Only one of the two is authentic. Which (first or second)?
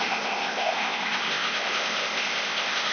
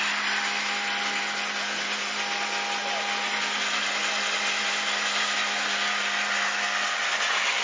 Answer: second